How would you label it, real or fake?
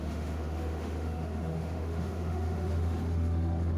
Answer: fake